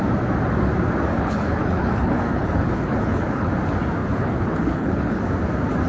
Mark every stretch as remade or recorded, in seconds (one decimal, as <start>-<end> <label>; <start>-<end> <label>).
0.0-1.1 recorded; 1.1-3.5 remade; 3.5-4.0 recorded; 4.0-5.2 remade; 5.2-5.9 recorded